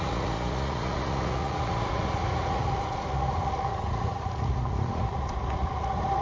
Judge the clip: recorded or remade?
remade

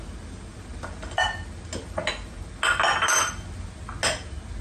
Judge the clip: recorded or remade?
recorded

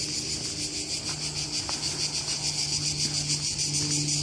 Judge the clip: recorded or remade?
recorded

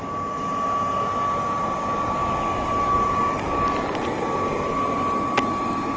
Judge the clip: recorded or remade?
recorded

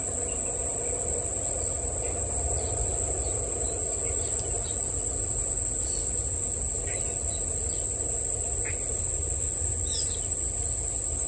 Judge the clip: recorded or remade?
recorded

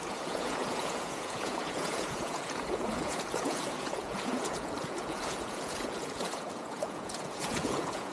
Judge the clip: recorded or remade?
remade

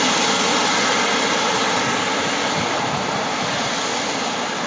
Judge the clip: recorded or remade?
recorded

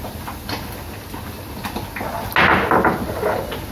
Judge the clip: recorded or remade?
recorded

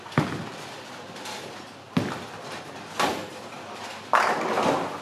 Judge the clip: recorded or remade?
recorded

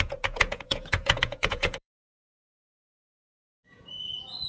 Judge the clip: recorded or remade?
remade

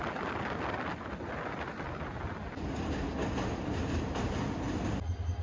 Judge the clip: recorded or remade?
recorded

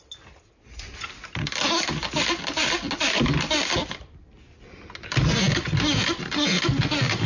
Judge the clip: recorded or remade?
recorded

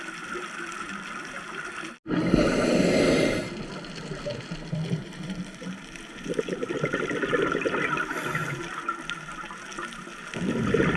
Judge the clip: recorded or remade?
recorded